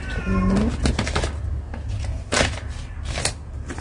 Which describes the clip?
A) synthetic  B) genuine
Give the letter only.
B